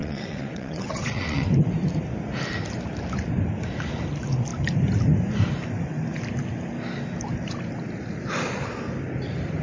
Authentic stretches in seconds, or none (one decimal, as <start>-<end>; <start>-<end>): 1.5-9.6